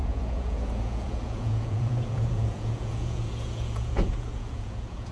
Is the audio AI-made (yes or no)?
yes